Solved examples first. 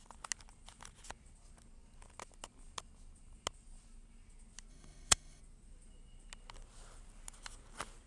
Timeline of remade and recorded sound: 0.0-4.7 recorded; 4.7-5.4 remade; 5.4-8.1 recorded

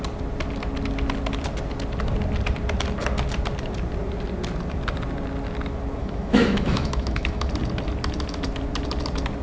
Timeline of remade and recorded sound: 0.0-6.0 recorded; 6.0-7.5 remade; 7.5-9.4 recorded